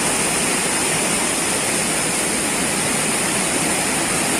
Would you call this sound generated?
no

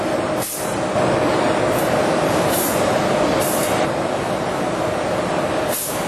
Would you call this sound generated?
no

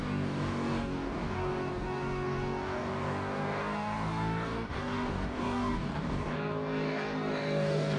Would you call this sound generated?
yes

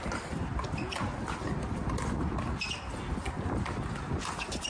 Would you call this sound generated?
no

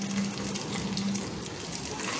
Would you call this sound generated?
no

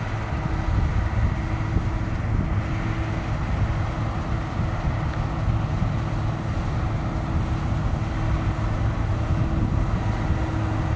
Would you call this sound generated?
no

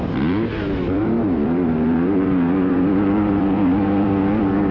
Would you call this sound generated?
yes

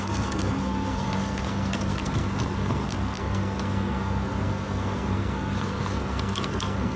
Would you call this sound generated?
yes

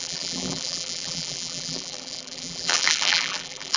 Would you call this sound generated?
yes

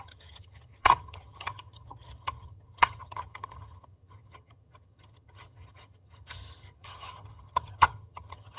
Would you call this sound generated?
yes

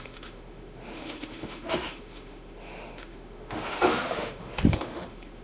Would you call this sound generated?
yes